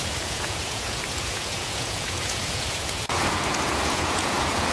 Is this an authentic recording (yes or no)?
no